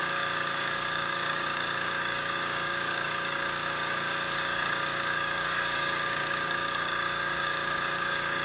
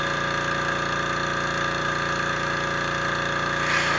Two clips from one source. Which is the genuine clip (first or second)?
second